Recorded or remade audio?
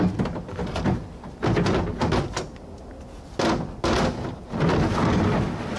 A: recorded